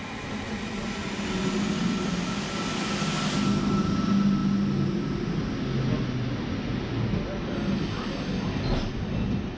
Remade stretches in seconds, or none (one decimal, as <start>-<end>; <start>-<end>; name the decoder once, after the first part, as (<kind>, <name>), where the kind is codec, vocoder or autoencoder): none